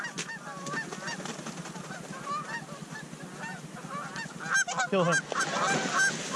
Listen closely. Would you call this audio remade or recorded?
recorded